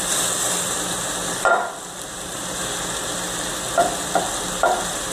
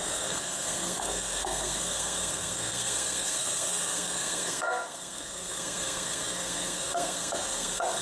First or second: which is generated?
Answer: second